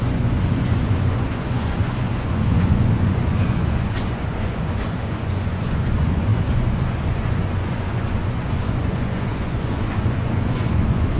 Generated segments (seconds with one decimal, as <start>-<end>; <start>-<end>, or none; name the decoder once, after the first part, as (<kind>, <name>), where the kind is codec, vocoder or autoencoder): 0.0-11.2 (vocoder, Vocos)